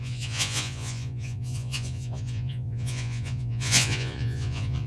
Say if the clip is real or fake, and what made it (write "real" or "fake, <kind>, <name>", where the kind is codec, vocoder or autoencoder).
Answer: fake, vocoder, Vocos